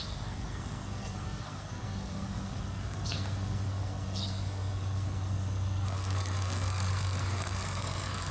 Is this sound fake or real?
fake